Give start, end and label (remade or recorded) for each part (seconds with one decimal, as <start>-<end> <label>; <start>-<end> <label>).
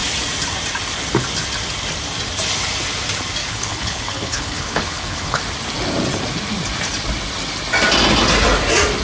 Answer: 0.0-3.4 recorded; 3.4-5.4 remade; 5.4-9.0 recorded